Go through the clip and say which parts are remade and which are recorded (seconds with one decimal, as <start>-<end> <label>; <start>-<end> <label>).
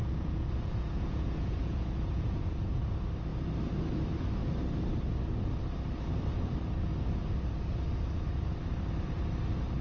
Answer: 0.0-2.8 remade; 2.8-9.8 recorded